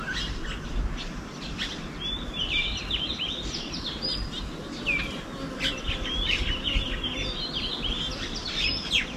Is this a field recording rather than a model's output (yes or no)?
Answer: yes